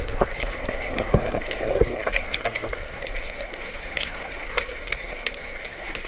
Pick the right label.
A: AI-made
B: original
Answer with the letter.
A